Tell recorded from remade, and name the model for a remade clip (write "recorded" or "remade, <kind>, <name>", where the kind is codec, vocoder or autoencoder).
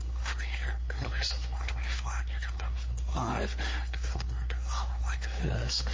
remade, codec, SNAC